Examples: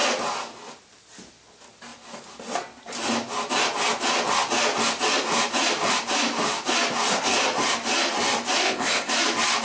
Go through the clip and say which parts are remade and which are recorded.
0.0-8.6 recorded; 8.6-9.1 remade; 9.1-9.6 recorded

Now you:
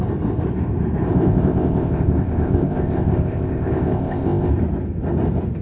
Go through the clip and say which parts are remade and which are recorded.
0.0-1.1 recorded; 1.1-4.5 remade; 4.5-5.6 recorded

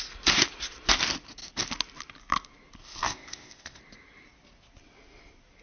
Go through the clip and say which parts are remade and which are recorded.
0.0-2.8 recorded; 2.8-3.8 remade; 3.8-5.6 recorded

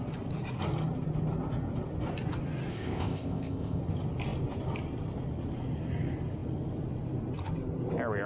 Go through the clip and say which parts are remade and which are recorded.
0.0-2.7 recorded; 2.7-3.8 remade; 3.8-8.3 recorded

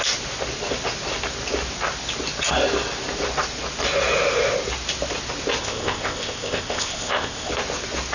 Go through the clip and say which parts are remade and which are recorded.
0.0-5.6 recorded; 5.6-7.5 remade; 7.5-8.1 recorded

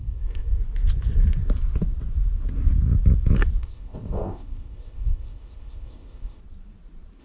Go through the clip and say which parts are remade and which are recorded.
0.0-0.6 remade; 0.6-3.6 recorded; 3.6-6.4 remade; 6.4-7.2 recorded

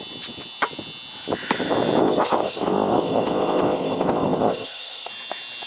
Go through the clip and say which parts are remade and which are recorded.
0.0-2.0 recorded; 2.0-5.1 remade; 5.1-5.7 recorded